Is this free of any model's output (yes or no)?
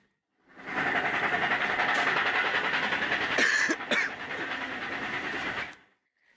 yes